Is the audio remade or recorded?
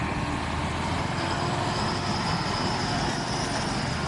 recorded